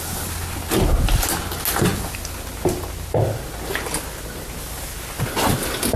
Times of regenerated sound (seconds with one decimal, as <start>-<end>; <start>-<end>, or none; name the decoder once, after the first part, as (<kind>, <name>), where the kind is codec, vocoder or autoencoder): none